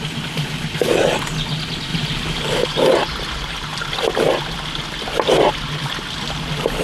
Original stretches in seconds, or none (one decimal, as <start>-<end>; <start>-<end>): 0.0-6.8